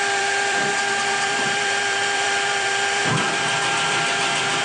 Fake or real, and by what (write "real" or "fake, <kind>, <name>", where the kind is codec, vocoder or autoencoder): fake, vocoder, BigVGAN v2